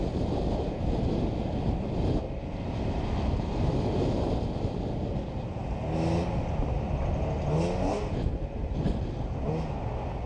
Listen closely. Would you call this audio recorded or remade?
recorded